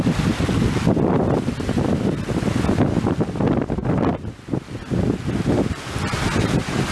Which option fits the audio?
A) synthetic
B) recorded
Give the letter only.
B